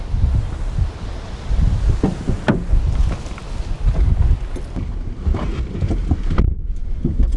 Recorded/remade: recorded